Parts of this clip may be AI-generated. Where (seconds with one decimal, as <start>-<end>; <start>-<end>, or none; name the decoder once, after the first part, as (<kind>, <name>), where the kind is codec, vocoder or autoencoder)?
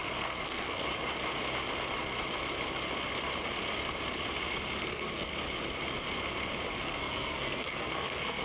0.0-0.9 (codec, SNAC); 4.8-5.3; 6.8-8.4